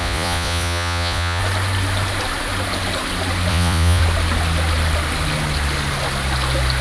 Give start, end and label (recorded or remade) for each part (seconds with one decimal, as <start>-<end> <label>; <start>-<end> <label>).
0.0-1.4 remade; 1.4-3.5 recorded; 3.5-4.0 remade; 4.0-6.8 recorded